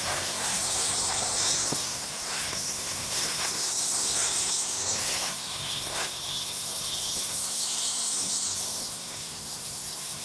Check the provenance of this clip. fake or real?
fake